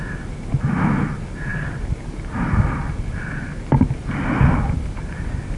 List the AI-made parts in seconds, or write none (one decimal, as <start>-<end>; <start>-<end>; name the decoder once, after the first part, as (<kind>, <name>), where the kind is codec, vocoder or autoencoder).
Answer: none